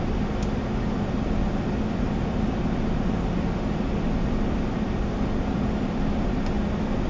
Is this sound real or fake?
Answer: real